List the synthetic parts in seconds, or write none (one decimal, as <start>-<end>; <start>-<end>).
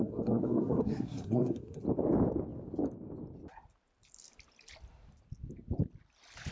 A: 0.0-1.8